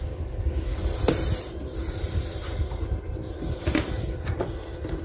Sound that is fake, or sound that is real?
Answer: real